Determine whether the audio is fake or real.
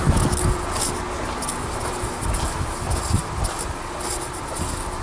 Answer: real